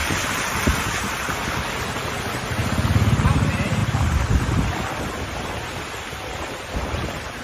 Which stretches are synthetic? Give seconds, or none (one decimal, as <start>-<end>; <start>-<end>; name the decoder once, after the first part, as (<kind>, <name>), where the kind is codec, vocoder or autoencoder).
none